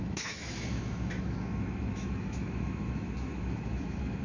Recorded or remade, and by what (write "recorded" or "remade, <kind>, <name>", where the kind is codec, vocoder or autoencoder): remade, autoencoder, DAC-VAE